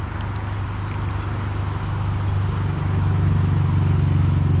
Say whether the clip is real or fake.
real